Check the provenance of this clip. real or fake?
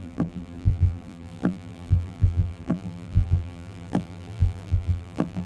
fake